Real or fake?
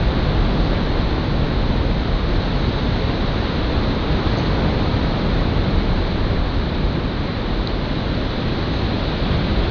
real